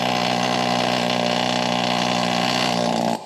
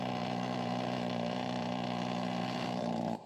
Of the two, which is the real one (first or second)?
first